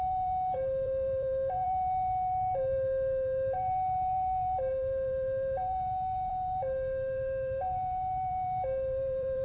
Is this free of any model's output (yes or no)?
no